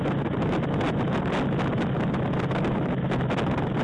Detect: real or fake real